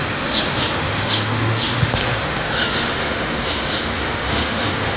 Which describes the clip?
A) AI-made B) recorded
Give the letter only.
A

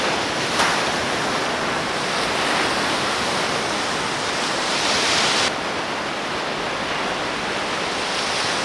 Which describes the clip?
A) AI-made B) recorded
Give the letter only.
B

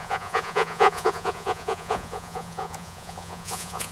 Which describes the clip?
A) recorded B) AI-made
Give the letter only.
B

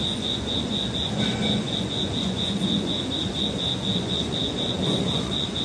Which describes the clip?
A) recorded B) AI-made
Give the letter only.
B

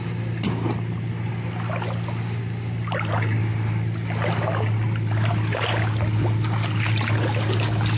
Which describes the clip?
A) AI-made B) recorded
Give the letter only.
B